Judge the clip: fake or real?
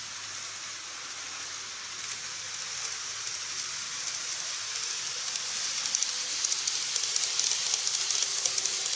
real